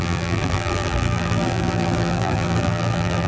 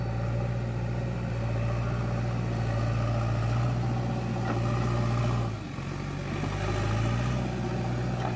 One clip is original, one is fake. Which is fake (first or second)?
first